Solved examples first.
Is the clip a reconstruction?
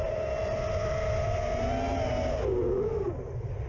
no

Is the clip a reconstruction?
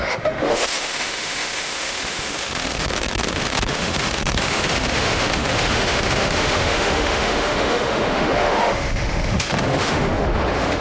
yes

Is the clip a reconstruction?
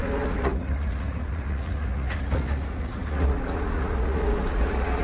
yes